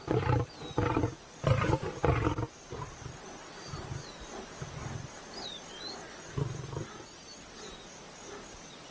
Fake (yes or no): no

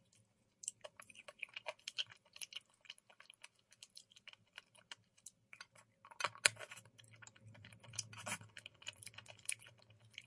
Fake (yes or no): no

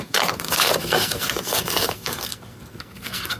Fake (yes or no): yes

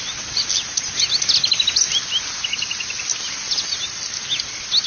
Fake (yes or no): no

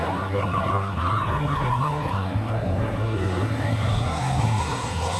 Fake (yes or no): yes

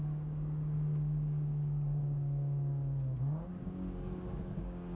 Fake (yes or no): yes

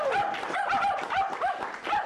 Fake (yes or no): yes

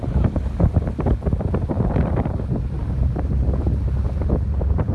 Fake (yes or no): no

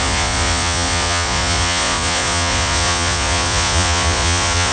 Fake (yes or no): yes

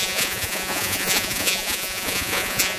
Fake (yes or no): yes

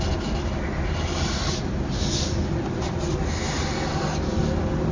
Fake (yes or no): no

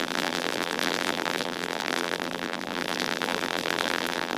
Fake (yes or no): yes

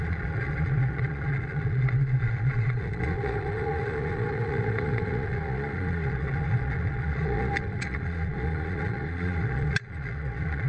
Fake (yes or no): yes